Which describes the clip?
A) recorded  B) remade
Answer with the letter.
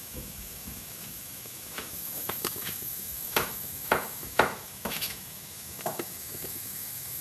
B